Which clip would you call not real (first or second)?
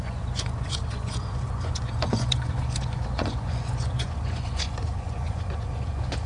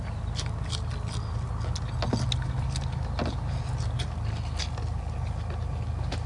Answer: first